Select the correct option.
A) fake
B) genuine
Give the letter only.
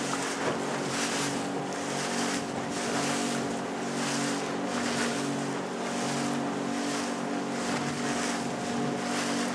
B